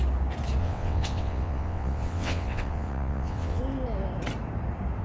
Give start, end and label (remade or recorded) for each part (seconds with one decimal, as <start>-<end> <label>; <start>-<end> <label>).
0.0-0.6 recorded; 0.6-3.6 remade; 3.6-5.0 recorded

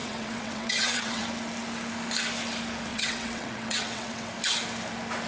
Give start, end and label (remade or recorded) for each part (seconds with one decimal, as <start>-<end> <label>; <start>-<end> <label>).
0.0-1.2 remade; 1.2-2.9 recorded; 2.9-4.3 remade; 4.3-5.3 recorded

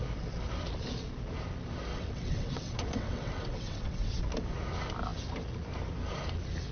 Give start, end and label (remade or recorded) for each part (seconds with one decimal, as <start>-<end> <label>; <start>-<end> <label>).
0.0-1.9 recorded; 1.9-4.2 remade; 4.2-6.7 recorded

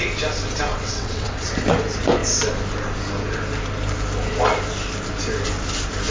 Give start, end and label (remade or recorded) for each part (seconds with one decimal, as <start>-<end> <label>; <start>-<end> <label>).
0.0-0.7 recorded; 0.7-1.5 remade; 1.5-6.1 recorded

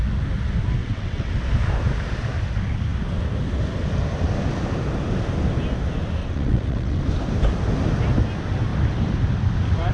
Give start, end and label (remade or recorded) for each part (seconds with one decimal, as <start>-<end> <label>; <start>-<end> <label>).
0.0-0.8 recorded; 0.8-1.3 remade; 1.3-6.2 recorded; 6.2-7.0 remade; 7.0-9.9 recorded

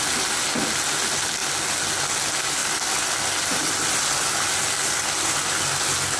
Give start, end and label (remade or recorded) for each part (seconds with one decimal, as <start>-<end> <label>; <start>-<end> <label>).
0.0-6.2 recorded

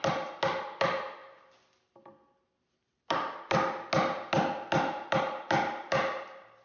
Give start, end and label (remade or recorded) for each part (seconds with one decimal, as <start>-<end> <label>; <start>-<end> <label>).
0.0-6.6 recorded

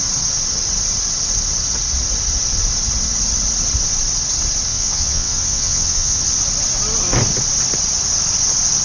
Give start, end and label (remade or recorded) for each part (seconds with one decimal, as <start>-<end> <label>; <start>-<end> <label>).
0.0-4.7 recorded; 4.7-6.2 remade; 6.2-8.8 recorded